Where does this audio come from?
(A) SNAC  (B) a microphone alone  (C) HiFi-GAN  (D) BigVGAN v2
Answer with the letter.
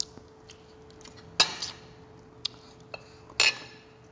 B